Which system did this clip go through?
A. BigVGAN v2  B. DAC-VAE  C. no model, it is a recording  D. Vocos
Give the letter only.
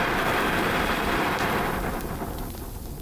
C